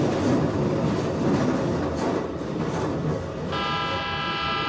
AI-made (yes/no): no